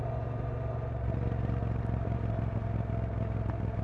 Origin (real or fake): real